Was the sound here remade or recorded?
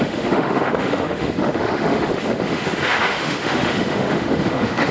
remade